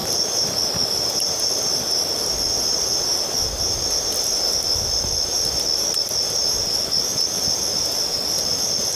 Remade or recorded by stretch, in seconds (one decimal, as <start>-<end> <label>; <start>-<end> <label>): 0.0-9.0 recorded